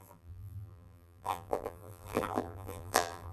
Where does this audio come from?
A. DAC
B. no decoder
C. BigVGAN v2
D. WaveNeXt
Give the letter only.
C